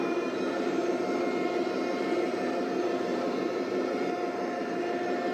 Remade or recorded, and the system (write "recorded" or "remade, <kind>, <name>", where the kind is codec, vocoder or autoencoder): remade, vocoder, BigVGAN v2